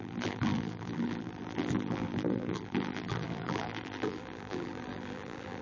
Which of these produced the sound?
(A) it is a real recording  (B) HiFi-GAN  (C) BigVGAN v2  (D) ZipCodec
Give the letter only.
C